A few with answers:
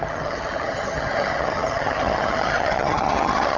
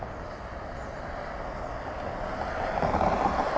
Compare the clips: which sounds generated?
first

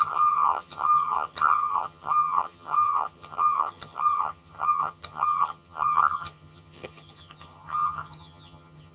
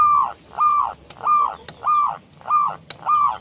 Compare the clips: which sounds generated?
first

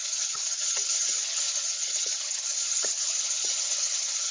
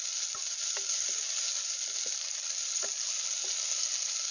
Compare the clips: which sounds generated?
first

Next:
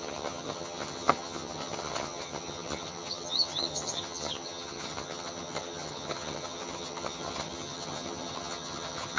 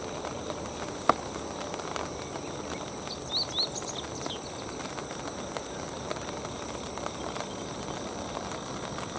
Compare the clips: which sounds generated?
first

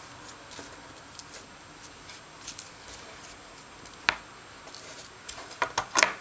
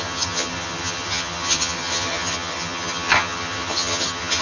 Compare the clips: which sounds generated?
second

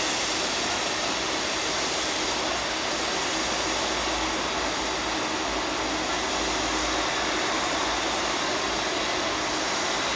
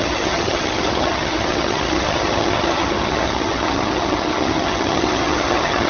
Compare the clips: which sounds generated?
second